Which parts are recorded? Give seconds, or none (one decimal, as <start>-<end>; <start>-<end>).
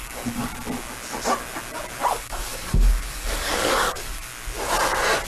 0.5-2.1; 4.3-5.3